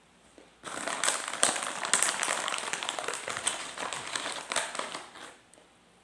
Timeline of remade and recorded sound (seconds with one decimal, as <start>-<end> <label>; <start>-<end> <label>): 0.0-0.5 remade; 0.5-2.2 recorded; 2.2-3.5 remade; 3.5-5.0 recorded; 5.0-6.0 remade